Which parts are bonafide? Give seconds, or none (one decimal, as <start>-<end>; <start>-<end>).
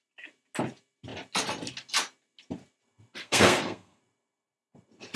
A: 0.0-3.2; 4.0-5.2